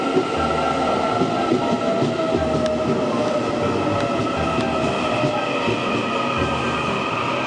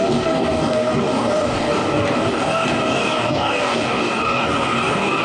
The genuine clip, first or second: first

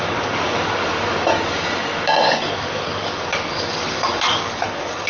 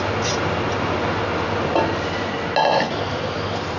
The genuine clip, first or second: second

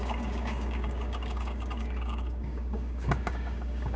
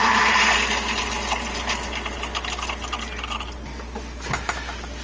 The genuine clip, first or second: second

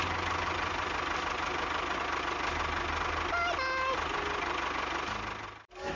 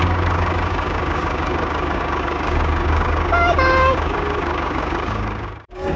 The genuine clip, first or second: first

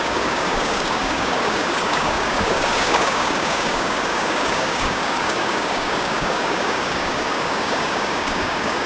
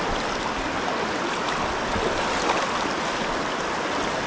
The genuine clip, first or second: second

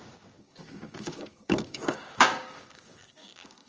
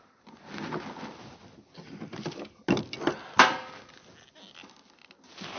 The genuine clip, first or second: second